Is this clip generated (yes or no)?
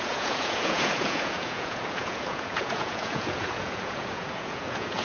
yes